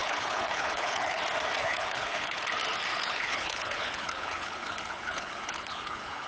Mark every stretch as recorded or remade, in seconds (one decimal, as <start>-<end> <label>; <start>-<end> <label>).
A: 0.0-1.2 remade; 1.2-1.6 recorded; 1.6-2.4 remade; 2.4-2.9 recorded; 2.9-6.3 remade